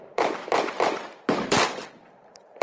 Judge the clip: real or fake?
fake